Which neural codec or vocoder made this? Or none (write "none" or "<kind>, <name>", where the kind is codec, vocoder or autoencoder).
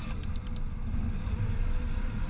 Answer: none